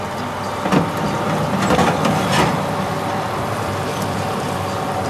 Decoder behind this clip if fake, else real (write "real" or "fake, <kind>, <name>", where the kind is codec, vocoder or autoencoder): fake, vocoder, BigVGAN v2